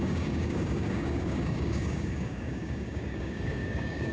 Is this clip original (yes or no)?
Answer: no